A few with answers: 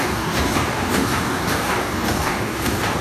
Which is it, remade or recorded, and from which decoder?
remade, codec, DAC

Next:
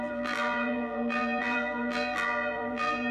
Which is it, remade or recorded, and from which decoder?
remade, vocoder, BigVGAN v2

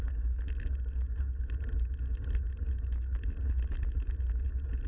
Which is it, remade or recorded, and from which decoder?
recorded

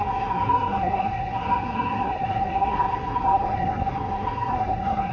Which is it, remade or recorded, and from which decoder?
remade, codec, SNAC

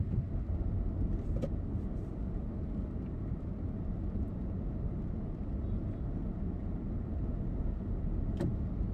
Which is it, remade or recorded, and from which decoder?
recorded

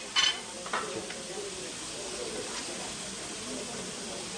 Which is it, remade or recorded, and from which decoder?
remade, vocoder, BigVGAN v2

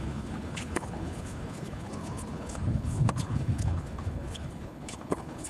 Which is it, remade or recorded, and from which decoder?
remade, codec, HILCodec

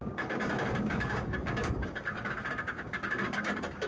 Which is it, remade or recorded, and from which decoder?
remade, codec, DAC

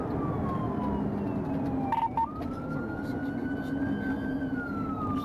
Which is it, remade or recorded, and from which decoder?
recorded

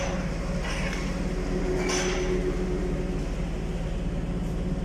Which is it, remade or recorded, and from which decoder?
recorded